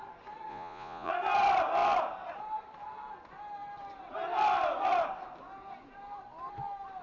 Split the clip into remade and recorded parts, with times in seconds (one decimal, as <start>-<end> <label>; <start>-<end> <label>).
0.0-0.5 recorded; 0.5-1.1 remade; 1.1-7.0 recorded